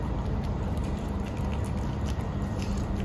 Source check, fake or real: real